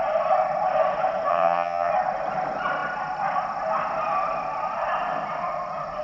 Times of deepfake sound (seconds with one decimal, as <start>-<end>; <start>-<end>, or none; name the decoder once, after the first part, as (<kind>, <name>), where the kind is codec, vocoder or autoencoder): 1.3-1.9 (vocoder, HiFi-GAN)